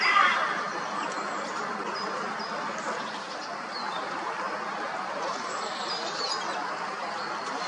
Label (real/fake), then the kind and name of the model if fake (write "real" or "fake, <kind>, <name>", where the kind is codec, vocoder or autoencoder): real